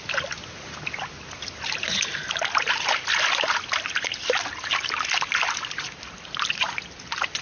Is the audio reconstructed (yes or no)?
no